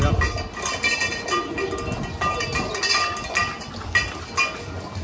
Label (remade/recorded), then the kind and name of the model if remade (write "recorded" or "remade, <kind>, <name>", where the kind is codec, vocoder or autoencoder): recorded